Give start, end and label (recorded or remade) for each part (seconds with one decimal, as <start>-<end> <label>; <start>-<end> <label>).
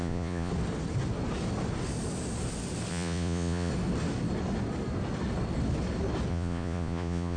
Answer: 0.0-0.5 remade; 0.5-2.9 recorded; 2.9-3.7 remade; 3.7-6.3 recorded; 6.3-7.4 remade